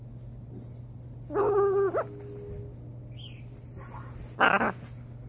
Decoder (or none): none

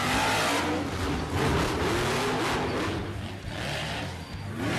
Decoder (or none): none